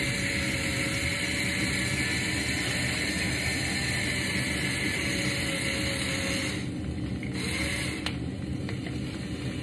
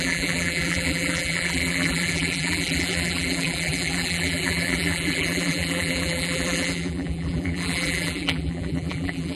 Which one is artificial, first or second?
second